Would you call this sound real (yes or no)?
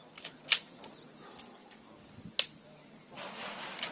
yes